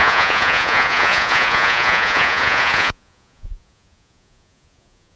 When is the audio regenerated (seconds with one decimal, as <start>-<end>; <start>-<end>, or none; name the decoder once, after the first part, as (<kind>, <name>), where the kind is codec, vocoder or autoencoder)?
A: 0.0-5.2 (vocoder, Vocos)